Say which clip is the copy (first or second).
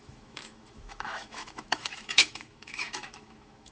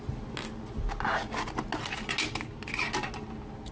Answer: first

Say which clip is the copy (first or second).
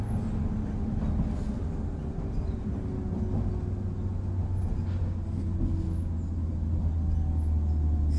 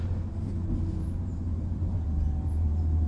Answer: second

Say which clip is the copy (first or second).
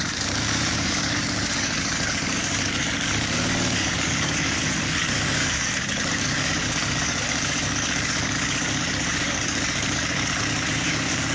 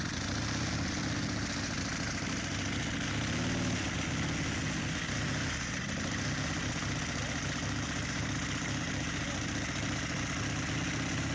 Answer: first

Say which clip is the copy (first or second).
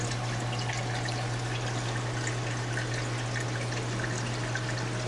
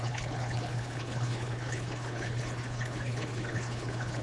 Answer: second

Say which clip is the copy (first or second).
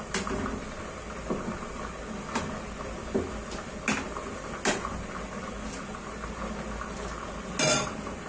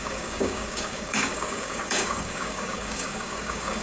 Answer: second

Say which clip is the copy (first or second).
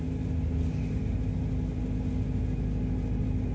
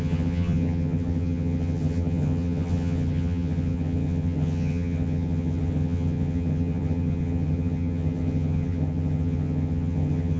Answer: second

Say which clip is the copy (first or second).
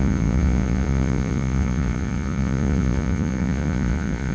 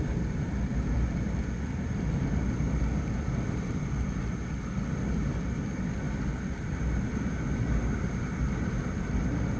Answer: first